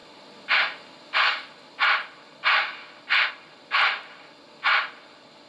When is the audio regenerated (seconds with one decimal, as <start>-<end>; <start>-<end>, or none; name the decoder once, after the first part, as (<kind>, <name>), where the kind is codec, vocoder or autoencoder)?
none